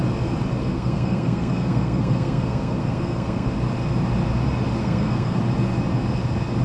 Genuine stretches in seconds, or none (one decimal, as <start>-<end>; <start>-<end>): 0.0-0.6; 3.5-4.8; 5.4-6.6